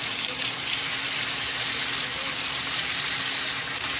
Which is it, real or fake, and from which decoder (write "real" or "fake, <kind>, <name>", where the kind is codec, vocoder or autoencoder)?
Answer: fake, vocoder, BigVGAN v2